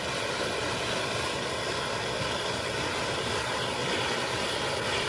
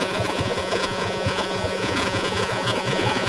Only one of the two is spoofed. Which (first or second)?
second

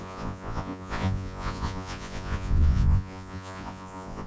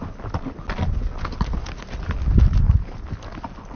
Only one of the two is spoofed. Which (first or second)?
first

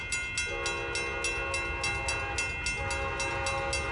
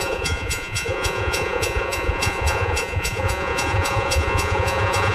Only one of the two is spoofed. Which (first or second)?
second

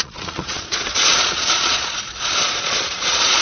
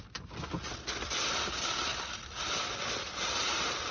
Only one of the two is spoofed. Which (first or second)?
first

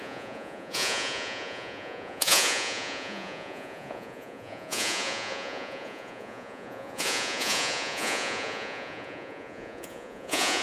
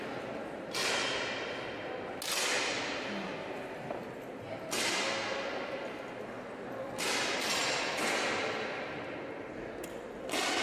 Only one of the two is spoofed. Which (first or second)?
first